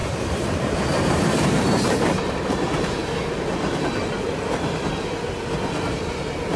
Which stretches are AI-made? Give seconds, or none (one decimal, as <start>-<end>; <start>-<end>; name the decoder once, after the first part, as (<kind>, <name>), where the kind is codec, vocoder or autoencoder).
0.0-3.0 (vocoder, BigVGAN v2); 5.9-6.6